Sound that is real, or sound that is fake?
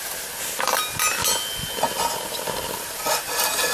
real